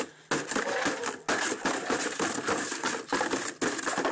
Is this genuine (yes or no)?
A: yes